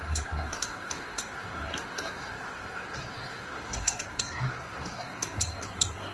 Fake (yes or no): yes